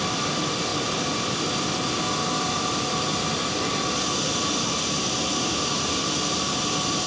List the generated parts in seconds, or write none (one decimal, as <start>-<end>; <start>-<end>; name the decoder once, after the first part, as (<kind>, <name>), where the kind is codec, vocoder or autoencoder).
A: none